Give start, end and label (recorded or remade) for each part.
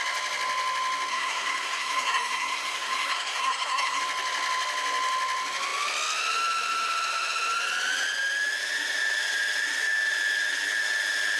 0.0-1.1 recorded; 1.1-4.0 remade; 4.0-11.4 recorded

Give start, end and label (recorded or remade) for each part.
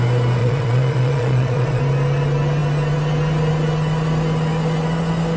0.0-0.4 recorded; 0.4-1.8 remade; 1.8-5.4 recorded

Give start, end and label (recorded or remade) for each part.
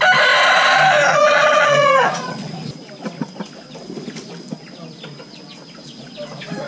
0.0-1.1 recorded; 1.1-2.7 remade; 2.7-6.7 recorded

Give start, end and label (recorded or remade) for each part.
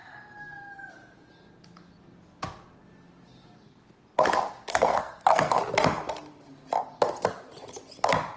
0.0-4.7 recorded; 4.7-5.6 remade; 5.6-8.4 recorded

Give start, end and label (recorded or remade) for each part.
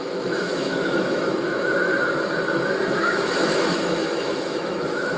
0.0-1.9 remade; 1.9-2.9 recorded; 2.9-5.2 remade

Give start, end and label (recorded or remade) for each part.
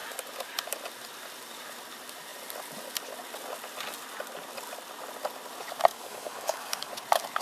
0.0-5.9 recorded; 5.9-6.9 remade; 6.9-7.4 recorded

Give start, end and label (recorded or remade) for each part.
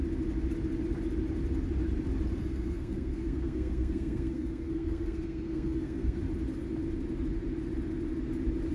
0.0-2.4 recorded; 2.4-6.2 remade; 6.2-8.7 recorded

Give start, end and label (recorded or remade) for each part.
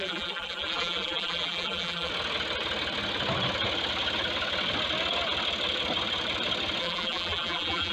0.0-2.1 remade; 2.1-6.8 recorded; 6.8-7.9 remade